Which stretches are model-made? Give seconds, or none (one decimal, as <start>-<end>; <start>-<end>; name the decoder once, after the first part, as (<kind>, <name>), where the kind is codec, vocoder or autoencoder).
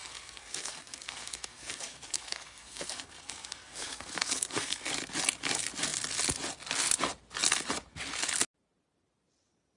0.0-4.9 (codec, SNAC)